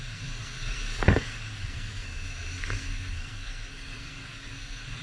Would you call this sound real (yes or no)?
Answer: no